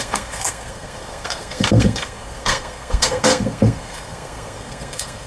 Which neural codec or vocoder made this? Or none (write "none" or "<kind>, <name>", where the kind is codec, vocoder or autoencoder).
codec, SNAC